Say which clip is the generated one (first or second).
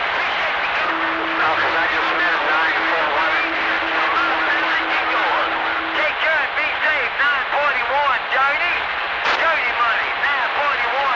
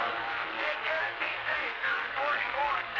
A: second